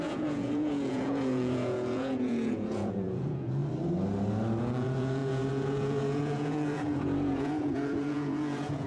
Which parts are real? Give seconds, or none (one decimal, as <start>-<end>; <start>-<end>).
3.6-4.6